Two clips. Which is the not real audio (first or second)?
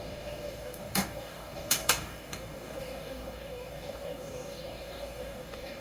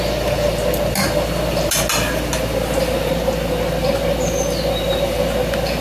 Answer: first